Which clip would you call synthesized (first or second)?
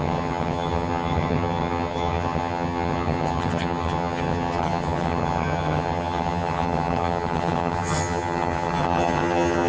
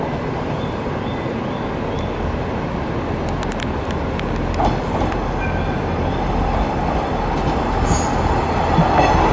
first